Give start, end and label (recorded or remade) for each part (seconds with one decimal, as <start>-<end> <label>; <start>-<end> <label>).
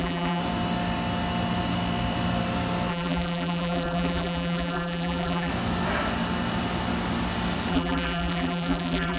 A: 0.0-0.4 remade; 0.4-2.9 recorded; 2.9-5.5 remade; 5.5-7.7 recorded; 7.7-9.2 remade